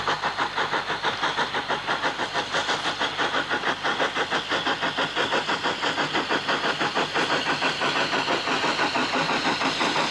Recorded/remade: recorded